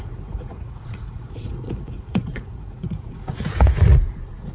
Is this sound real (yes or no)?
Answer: no